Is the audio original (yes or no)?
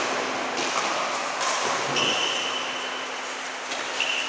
yes